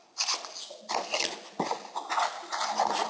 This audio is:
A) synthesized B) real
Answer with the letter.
B